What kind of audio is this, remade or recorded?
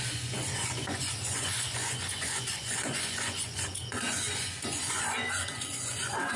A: remade